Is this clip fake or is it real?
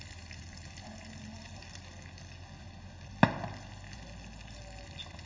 real